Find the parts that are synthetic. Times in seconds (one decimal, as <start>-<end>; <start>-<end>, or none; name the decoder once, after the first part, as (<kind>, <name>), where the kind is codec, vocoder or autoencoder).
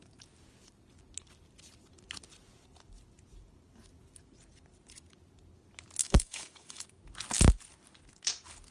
6.0-7.0 (autoencoder, DAC-VAE)